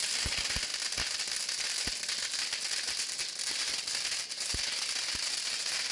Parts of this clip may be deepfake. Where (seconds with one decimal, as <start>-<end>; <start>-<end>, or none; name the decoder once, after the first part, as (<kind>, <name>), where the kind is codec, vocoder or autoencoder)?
none